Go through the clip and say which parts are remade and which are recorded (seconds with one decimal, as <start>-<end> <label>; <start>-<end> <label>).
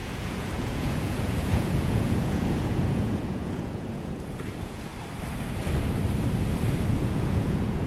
0.0-4.9 remade; 4.9-6.9 recorded; 6.9-7.9 remade